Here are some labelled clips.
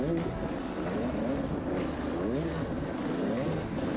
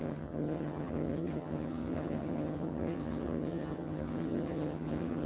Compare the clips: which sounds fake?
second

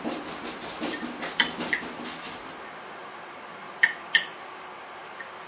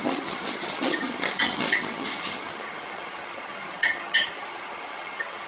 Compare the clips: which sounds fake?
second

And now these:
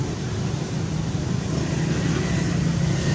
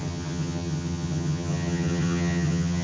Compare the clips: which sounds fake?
second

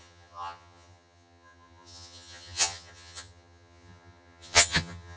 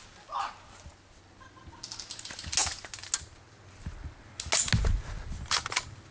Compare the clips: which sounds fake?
first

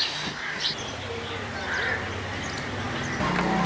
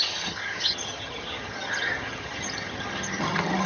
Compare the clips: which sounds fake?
second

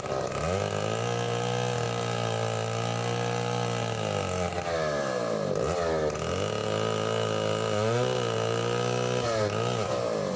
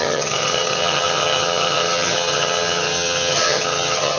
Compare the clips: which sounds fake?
second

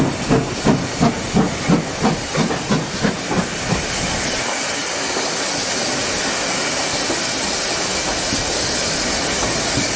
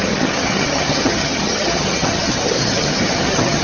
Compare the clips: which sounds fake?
second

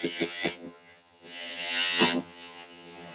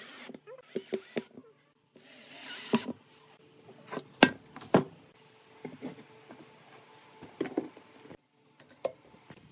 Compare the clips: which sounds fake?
first